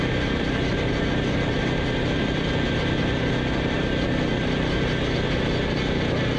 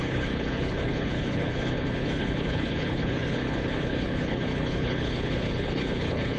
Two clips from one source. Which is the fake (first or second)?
second